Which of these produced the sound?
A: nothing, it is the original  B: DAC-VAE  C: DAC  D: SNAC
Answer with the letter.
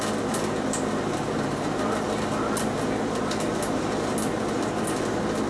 A